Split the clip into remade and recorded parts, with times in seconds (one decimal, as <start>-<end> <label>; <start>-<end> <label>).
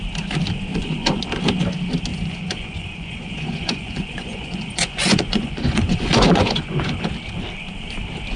0.0-0.7 recorded; 0.7-1.2 remade; 1.2-2.1 recorded; 2.1-7.1 remade; 7.1-8.4 recorded